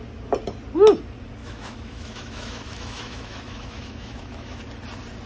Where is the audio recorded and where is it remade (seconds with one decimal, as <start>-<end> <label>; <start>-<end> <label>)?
0.0-1.4 recorded; 1.4-4.6 remade; 4.6-5.3 recorded